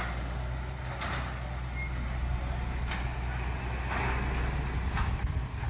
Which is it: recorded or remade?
recorded